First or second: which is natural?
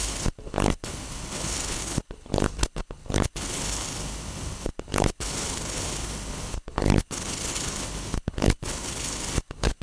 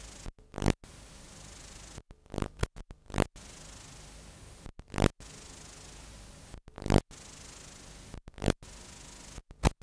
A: second